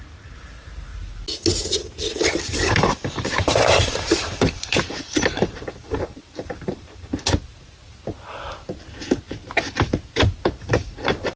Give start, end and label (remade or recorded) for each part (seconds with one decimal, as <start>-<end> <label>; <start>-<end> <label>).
0.0-0.9 remade; 0.9-2.4 recorded; 2.4-7.1 remade; 7.1-10.6 recorded; 10.6-11.4 remade